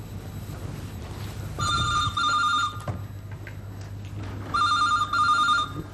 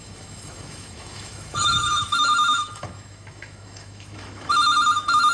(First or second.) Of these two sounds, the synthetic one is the second